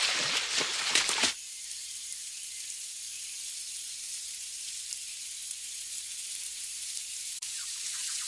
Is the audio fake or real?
fake